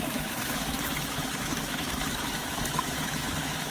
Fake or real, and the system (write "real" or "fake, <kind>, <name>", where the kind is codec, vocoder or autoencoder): fake, autoencoder, DAC-VAE